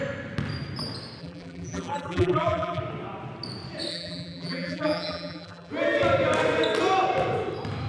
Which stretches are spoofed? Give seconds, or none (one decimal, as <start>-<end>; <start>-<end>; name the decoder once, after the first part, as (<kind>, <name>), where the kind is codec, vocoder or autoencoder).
1.2-2.8 (vocoder, BigVGAN v2); 3.9-5.7